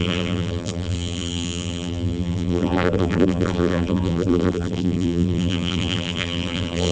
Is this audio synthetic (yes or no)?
yes